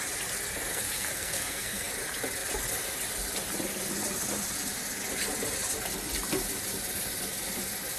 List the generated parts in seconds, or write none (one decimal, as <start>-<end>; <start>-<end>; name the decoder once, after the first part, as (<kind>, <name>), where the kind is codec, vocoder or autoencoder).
0.7-1.9 (codec, SNAC)